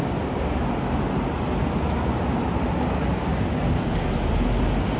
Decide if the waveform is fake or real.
real